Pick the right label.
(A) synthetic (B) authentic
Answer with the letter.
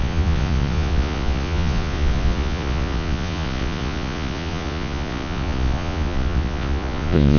A